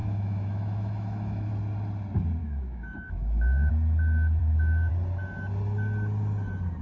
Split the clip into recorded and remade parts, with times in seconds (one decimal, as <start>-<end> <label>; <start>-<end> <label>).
0.0-1.5 remade; 1.5-2.4 recorded; 2.4-3.7 remade; 3.7-4.4 recorded; 4.4-4.9 remade; 4.9-6.8 recorded